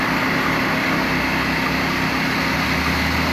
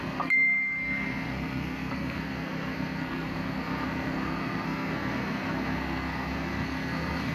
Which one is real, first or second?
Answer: first